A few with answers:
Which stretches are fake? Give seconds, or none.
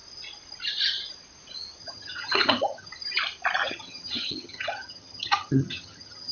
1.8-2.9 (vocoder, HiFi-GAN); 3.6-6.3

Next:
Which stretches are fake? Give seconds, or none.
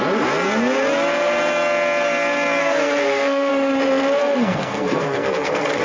2.6-3.5 (codec, SNAC); 4.2-5.8